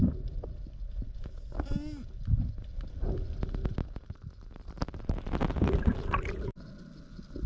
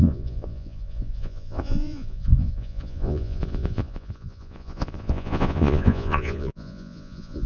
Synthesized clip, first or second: second